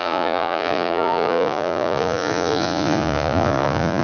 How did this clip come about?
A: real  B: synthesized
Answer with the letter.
B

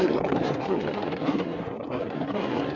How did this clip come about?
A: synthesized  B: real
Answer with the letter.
A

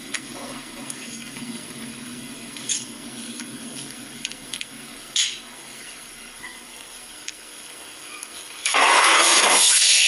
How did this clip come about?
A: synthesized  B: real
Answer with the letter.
A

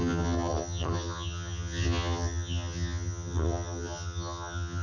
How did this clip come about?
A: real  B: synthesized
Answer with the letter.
B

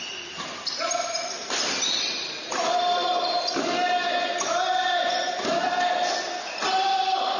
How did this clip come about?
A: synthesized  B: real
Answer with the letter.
B